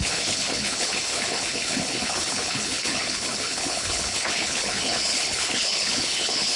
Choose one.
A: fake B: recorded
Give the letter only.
A